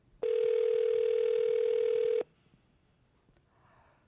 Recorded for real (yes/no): yes